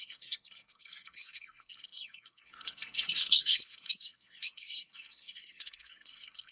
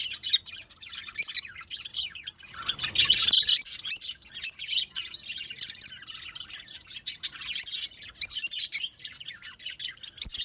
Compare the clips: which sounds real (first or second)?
second